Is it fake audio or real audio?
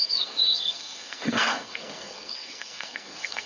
fake